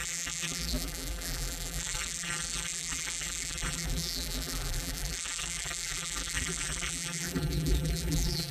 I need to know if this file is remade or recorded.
remade